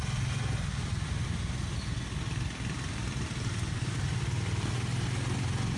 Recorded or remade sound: recorded